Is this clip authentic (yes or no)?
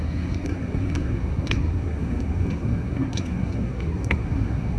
no